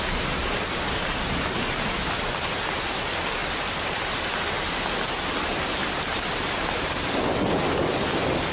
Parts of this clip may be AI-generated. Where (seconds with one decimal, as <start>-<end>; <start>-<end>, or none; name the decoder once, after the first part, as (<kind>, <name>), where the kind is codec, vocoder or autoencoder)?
3.4-4.0 (vocoder, BigVGAN v2); 5.8-6.7